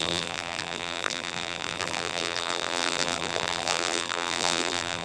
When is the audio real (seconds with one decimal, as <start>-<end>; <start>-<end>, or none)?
none